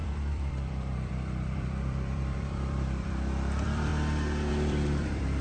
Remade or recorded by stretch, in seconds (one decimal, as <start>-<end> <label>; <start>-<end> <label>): 0.0-3.9 remade; 3.9-4.5 recorded; 4.5-5.4 remade